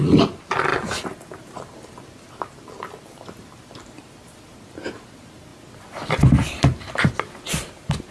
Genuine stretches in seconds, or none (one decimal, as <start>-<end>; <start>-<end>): 0.0-8.1